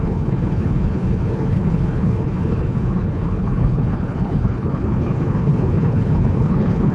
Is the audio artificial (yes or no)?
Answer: yes